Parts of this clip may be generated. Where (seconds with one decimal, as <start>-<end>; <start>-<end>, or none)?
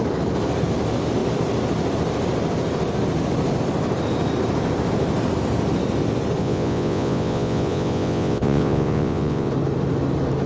6.4-9.5